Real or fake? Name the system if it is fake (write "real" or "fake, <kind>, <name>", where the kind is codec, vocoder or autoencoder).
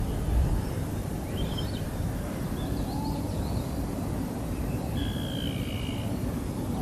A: real